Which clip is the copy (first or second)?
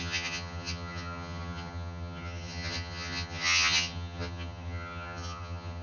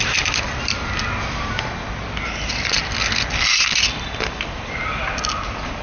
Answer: first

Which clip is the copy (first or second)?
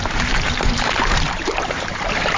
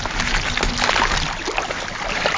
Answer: first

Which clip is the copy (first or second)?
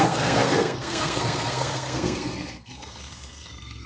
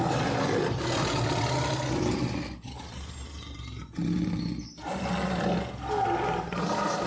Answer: first